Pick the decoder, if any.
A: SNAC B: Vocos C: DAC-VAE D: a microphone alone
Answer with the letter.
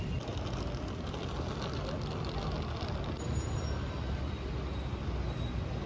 D